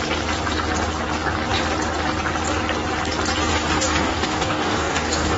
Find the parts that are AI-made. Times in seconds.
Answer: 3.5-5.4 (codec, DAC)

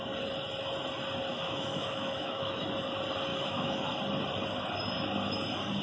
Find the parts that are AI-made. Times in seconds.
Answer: 1.3-2.7 (autoencoder, DAC-VAE); 3.3-3.8